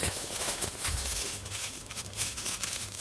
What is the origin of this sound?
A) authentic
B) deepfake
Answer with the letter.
B